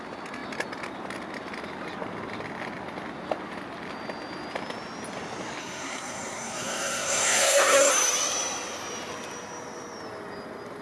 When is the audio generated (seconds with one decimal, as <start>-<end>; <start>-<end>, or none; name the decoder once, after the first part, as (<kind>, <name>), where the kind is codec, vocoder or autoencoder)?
5.6-7.9 (codec, SNAC)